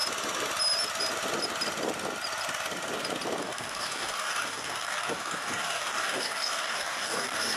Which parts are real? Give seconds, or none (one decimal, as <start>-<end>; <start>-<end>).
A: 0.0-3.4